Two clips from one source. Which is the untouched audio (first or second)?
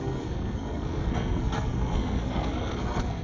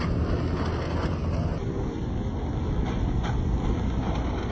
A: second